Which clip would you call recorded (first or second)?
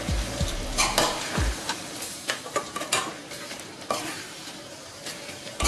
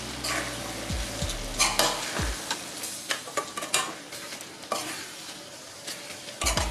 second